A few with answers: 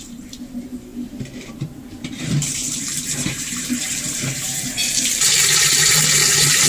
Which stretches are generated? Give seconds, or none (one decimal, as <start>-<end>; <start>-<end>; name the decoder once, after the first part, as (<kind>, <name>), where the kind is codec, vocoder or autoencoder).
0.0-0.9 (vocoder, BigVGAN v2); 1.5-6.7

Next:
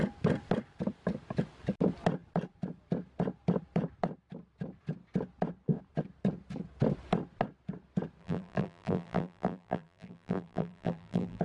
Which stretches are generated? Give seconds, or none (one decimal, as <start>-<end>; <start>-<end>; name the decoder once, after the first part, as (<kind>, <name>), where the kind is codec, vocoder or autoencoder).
8.2-11.4 (vocoder, BigVGAN v2)

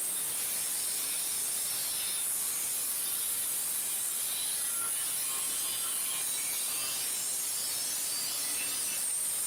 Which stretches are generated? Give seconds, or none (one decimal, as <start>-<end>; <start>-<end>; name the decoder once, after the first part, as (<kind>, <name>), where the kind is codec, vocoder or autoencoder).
none

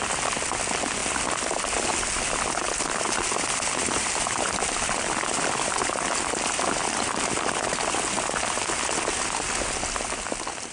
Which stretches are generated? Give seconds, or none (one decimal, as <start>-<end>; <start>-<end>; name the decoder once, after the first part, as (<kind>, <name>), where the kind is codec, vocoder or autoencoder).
none